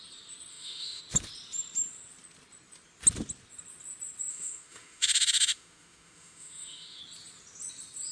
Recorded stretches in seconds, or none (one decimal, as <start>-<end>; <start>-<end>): 0.0-0.5; 1.0-4.3; 7.0-8.1